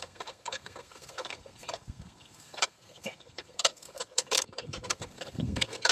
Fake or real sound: fake